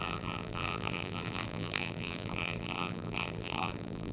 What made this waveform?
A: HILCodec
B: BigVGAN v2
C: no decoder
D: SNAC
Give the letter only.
B